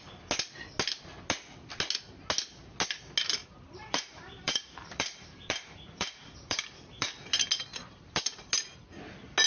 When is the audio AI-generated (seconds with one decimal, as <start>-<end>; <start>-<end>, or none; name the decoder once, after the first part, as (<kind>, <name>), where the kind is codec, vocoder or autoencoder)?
3.4-7.1 (vocoder, BigVGAN v2); 7.7-8.5